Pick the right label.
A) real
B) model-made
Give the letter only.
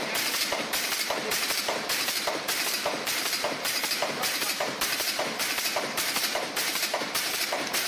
B